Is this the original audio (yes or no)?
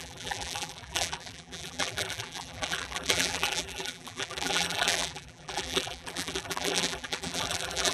no